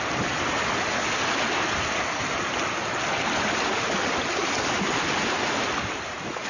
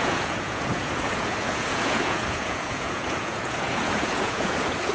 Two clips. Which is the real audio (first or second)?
first